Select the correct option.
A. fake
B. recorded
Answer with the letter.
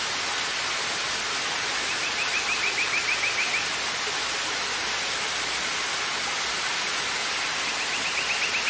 B